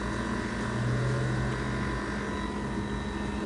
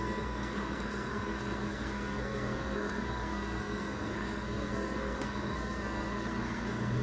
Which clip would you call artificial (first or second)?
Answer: second